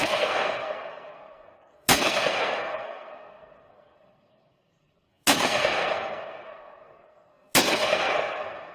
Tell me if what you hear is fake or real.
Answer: fake